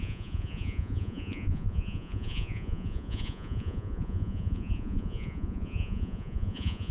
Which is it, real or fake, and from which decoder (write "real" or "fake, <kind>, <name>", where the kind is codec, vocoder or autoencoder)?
fake, vocoder, Vocos